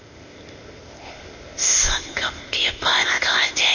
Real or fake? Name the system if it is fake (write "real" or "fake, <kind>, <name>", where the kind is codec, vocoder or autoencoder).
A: fake, codec, ZipCodec